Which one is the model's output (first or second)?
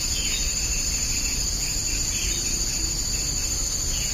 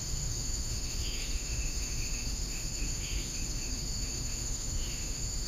second